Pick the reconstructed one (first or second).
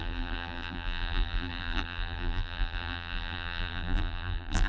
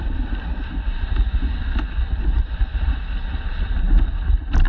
first